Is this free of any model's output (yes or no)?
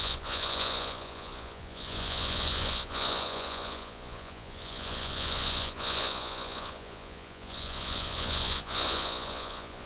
no